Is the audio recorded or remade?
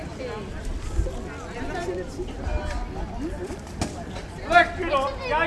recorded